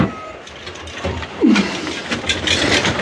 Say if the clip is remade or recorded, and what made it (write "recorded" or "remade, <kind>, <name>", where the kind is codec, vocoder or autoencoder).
recorded